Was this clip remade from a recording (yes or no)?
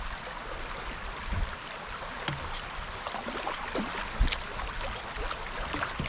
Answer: no